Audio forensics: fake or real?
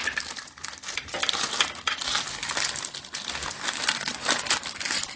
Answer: real